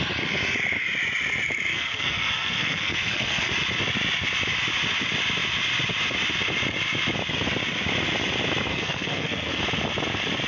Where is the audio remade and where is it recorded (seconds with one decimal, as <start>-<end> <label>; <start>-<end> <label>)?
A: 0.0-1.7 recorded; 1.7-3.5 remade; 3.5-8.7 recorded; 8.7-9.6 remade; 9.6-10.5 recorded